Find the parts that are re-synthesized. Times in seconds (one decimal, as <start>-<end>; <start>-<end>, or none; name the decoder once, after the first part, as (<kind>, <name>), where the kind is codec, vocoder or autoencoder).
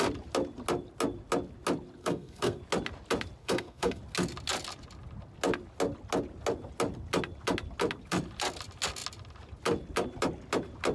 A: 2.0-2.6 (codec, SNAC); 3.4-4.0